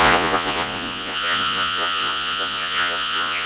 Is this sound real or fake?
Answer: fake